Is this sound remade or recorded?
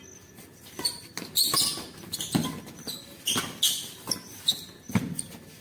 recorded